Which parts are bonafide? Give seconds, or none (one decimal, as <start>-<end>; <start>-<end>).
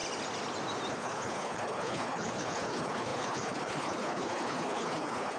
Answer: 0.0-0.9